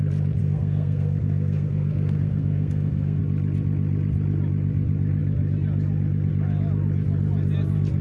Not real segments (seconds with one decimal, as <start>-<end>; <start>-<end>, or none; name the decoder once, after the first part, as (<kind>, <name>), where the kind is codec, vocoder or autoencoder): 0.4-3.2 (codec, SNAC)